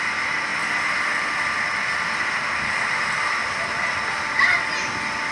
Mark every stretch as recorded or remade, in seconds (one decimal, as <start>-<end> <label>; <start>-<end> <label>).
0.0-5.3 recorded